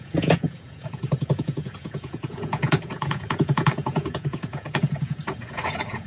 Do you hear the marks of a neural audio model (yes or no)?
yes